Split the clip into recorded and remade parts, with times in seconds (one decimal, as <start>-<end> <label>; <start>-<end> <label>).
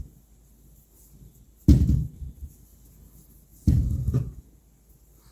0.0-3.5 recorded; 3.5-4.6 remade; 4.6-5.3 recorded